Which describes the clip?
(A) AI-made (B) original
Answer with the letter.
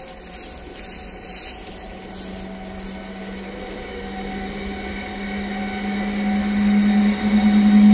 B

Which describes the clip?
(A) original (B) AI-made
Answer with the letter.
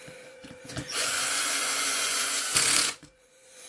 B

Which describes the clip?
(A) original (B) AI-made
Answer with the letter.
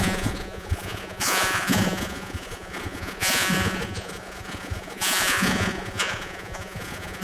B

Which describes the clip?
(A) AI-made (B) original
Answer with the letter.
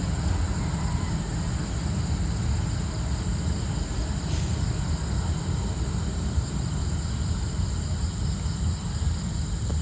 B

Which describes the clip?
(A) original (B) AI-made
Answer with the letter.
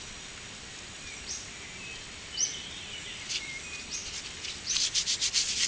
A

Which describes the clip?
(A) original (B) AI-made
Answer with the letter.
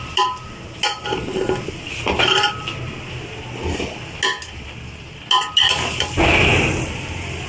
A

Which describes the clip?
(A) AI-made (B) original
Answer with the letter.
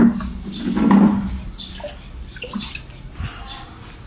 B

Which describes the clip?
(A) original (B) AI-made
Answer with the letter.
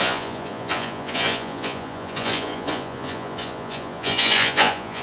B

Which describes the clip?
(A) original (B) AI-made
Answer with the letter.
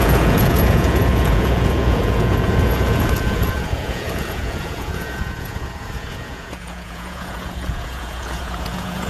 B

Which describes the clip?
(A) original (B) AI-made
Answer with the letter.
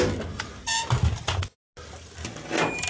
A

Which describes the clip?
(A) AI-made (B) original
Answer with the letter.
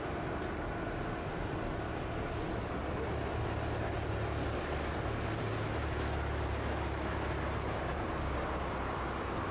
B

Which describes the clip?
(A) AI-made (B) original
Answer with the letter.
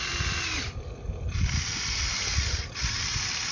B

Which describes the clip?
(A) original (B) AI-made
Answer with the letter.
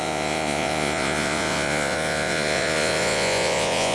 B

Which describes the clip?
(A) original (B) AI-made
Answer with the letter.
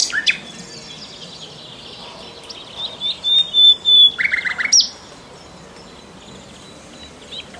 A